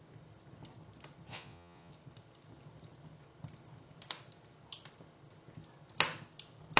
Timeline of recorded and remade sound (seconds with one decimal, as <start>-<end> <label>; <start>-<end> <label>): 0.0-1.3 recorded; 1.3-1.9 remade; 1.9-6.8 recorded